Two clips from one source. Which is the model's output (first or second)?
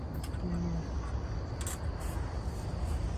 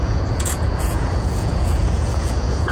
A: second